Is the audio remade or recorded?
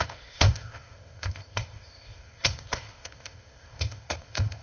remade